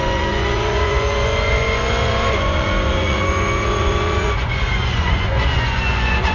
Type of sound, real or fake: fake